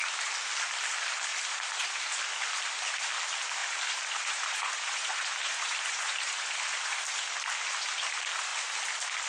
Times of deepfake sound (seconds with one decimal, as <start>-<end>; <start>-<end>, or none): 1.3-1.9; 3.6-7.1